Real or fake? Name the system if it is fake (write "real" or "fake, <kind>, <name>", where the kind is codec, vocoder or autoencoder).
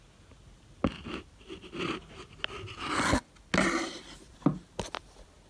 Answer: real